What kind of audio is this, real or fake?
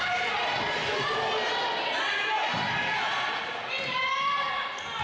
real